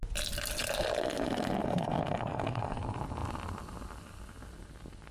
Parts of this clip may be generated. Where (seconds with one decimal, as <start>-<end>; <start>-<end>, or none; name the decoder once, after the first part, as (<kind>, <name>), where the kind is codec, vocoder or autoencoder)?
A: 1.6-2.8 (codec, SNAC)